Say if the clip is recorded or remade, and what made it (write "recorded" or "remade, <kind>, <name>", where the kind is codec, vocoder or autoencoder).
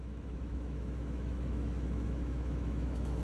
remade, autoencoder, DAC-VAE